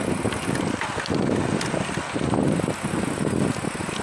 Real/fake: real